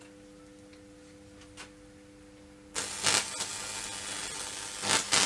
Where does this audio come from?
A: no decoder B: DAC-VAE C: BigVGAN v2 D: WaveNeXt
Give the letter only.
A